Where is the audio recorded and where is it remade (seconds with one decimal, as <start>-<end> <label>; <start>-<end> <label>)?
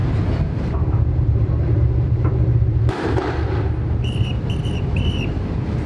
0.0-2.9 remade; 2.9-5.9 recorded